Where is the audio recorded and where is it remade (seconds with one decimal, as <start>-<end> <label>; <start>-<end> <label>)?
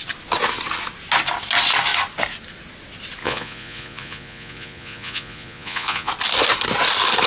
0.0-3.2 recorded; 3.2-6.1 remade; 6.1-7.3 recorded